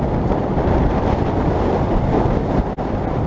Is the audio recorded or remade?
recorded